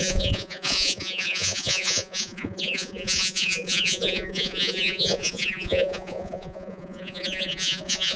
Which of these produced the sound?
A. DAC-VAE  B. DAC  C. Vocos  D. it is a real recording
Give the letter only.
C